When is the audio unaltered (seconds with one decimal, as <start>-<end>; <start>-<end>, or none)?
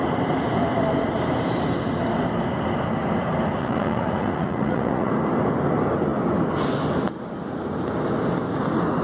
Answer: 0.0-3.6; 5.1-9.0